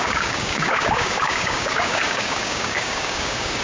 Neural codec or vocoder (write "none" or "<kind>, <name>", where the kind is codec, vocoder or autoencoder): codec, DAC